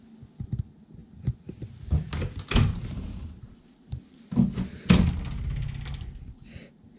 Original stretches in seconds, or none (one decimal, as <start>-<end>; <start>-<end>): 0.0-7.0